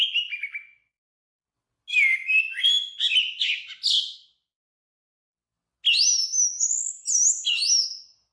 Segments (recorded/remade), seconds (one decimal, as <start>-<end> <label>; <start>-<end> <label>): 0.0-8.3 recorded